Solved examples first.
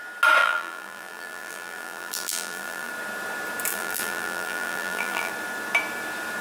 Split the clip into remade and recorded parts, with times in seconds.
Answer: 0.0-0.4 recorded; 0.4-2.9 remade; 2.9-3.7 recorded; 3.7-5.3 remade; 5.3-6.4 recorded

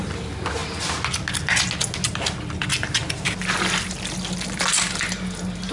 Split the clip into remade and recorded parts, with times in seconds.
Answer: 0.0-5.7 recorded

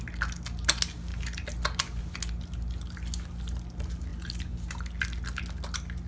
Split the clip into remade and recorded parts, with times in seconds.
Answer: 0.0-6.1 recorded

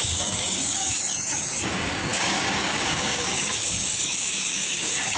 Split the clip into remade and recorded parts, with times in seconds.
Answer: 0.0-5.2 remade

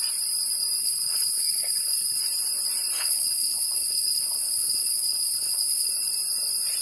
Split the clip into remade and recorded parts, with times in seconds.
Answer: 0.0-0.8 recorded; 0.8-2.2 remade; 2.2-3.0 recorded; 3.0-5.9 remade; 5.9-6.8 recorded

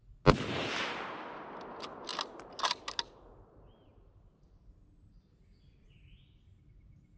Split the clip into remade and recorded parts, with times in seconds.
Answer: 0.0-7.2 recorded